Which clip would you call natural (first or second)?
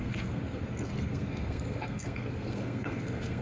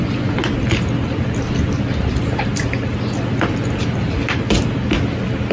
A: second